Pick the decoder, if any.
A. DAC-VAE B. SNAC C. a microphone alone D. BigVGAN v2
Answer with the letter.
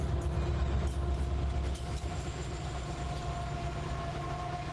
C